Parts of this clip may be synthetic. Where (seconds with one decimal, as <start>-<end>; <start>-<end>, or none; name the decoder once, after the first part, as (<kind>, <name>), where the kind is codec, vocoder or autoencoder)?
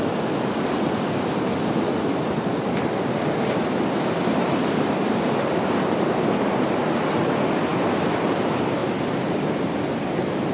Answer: 0.0-7.7 (vocoder, BigVGAN v2); 8.3-10.5